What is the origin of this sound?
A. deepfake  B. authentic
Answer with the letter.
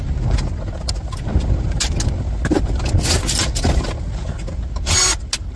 B